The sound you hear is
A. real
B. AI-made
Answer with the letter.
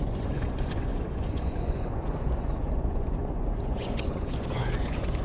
B